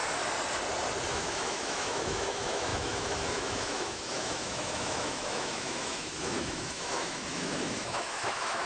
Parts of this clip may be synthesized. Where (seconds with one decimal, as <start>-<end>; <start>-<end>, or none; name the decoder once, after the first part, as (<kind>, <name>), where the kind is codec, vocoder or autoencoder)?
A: 1.1-8.7 (autoencoder, DAC-VAE)